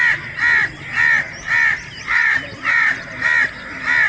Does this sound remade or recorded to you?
recorded